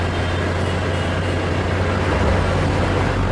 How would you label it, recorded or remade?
recorded